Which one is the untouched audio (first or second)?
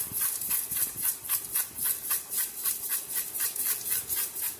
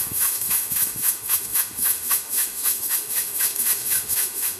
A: first